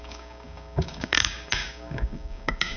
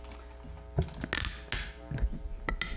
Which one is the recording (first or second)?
second